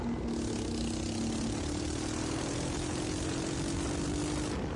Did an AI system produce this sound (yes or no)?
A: no